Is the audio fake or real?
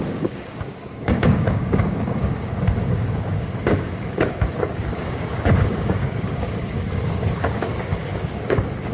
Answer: fake